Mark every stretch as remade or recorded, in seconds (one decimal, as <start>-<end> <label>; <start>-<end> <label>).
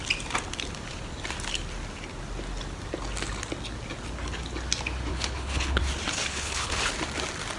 0.0-5.1 recorded; 5.1-5.8 remade; 5.8-6.3 recorded; 6.3-6.9 remade; 6.9-7.6 recorded